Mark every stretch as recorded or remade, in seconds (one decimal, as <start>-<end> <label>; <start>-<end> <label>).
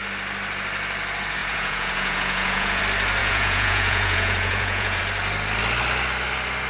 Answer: 0.0-1.4 recorded; 1.4-2.8 remade; 2.8-3.2 recorded; 3.2-5.0 remade; 5.0-6.7 recorded